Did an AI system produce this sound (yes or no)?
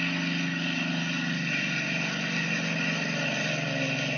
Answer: no